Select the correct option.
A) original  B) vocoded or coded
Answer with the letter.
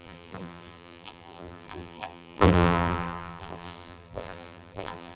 B